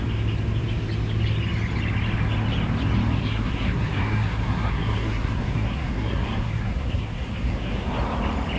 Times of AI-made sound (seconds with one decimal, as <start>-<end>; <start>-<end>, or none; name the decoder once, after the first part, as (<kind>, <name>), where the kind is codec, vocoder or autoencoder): 3.2-7.9 (codec, SNAC)

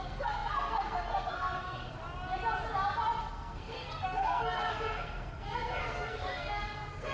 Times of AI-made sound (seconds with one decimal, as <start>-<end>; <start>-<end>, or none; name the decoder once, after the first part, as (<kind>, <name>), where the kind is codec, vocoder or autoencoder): 0.0-2.0 (codec, SNAC); 3.2-7.1

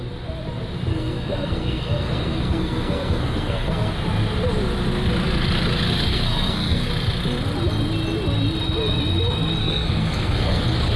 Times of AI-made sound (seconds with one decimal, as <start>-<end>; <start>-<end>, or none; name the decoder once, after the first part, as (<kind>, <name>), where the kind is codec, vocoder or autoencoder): 0.9-3.9 (codec, SNAC); 6.1-6.9; 9.6-10.6

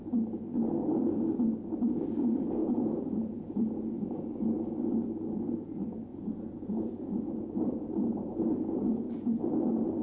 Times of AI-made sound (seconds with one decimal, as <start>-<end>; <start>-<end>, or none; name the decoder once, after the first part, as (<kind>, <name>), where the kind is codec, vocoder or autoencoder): 2.6-4.4 (vocoder, Vocos); 6.1-9.4

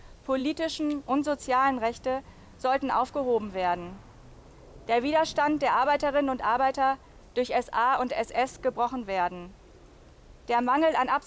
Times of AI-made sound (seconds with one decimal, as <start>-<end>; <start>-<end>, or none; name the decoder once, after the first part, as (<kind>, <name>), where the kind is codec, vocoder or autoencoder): none

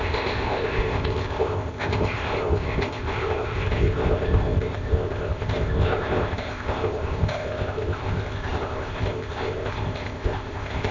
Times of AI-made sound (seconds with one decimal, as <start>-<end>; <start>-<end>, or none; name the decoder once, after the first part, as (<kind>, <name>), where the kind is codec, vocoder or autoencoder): 0.0-10.9 (codec, ZipCodec)

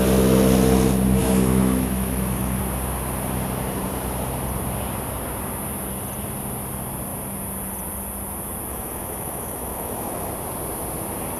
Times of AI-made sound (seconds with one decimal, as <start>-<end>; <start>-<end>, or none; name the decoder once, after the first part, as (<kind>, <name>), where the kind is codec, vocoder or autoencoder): 1.2-2.6 (autoencoder, DAC-VAE); 8.7-10.3

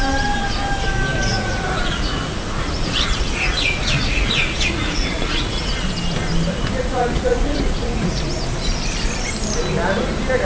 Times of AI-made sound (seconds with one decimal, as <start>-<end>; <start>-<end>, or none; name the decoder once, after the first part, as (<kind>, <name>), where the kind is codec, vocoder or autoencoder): 1.3-5.7 (vocoder, Vocos); 6.8-8.2